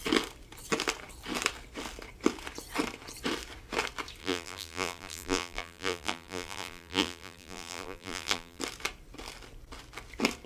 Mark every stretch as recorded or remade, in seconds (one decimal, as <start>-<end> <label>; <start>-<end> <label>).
0.0-4.2 recorded; 4.2-8.6 remade; 8.6-10.5 recorded